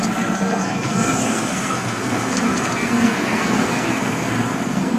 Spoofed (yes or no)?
yes